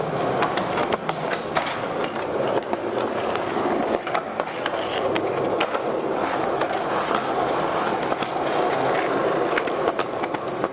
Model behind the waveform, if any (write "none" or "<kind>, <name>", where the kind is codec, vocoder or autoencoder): none